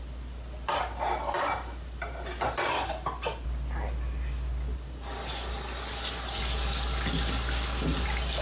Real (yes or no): yes